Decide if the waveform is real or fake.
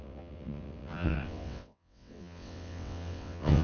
fake